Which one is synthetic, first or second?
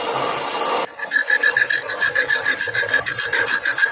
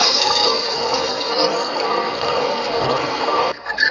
second